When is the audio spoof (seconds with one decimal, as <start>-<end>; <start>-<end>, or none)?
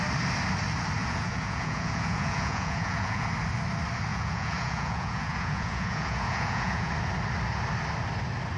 1.0-3.3; 4.1-6.9